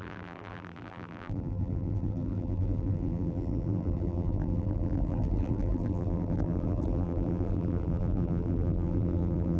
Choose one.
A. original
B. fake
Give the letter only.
B